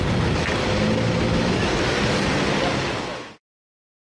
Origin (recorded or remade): recorded